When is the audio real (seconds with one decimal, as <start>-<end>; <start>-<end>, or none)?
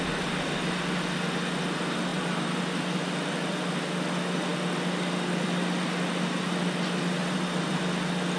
0.0-2.1; 2.6-7.2; 7.8-8.4